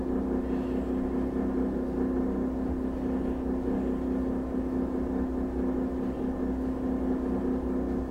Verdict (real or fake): real